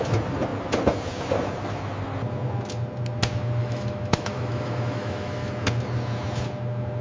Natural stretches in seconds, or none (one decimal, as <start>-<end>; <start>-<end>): 0.0-3.6; 5.5-7.0